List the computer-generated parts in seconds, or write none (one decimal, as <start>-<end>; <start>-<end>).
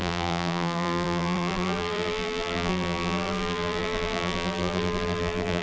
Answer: 0.0-5.6